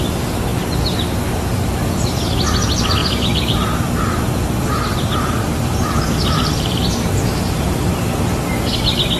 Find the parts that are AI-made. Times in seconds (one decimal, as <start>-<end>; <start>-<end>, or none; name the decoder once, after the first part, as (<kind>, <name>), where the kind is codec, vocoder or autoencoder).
3.0-8.0 (vocoder, BigVGAN v2)